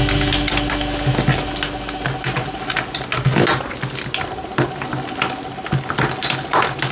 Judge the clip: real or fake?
real